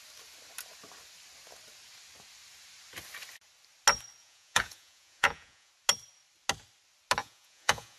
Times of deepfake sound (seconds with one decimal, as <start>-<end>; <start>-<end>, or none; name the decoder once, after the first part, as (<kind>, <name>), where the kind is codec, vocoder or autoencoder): 4.2-5.7 (vocoder, Vocos); 7.2-8.0